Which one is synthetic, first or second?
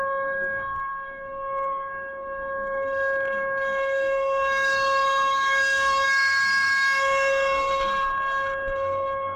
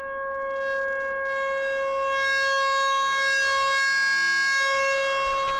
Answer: first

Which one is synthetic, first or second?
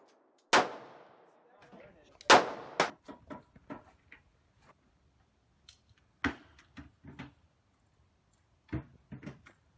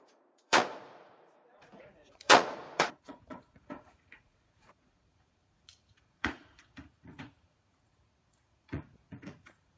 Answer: second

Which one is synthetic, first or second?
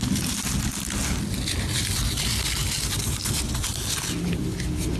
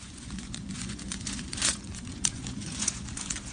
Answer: second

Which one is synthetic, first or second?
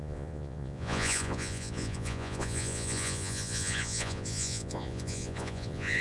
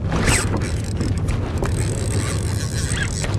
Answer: first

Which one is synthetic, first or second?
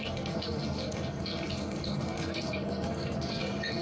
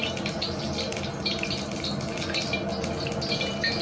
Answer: first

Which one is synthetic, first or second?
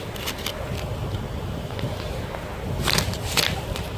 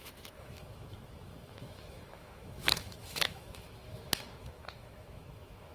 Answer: second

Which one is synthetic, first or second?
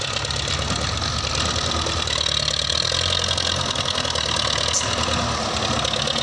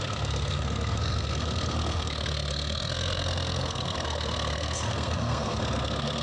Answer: second